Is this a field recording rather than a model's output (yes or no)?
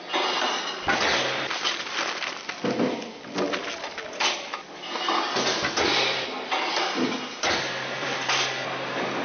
yes